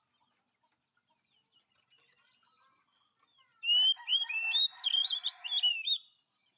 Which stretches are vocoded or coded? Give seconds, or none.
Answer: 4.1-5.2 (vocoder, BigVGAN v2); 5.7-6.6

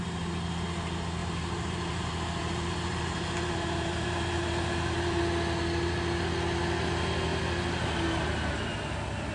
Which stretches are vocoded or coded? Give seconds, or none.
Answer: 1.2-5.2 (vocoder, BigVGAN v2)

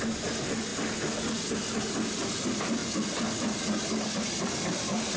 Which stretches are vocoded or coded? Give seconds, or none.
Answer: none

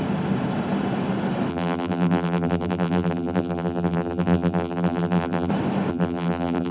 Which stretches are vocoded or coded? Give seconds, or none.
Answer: 1.5-5.5 (vocoder, BigVGAN v2); 5.9-6.7